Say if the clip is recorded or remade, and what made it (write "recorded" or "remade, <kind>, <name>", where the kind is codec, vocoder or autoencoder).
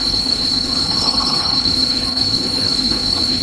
remade, codec, HILCodec